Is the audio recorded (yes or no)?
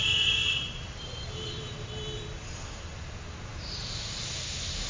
no